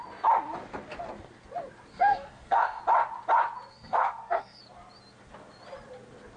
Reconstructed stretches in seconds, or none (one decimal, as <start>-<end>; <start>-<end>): 1.9-2.8; 3.7-4.6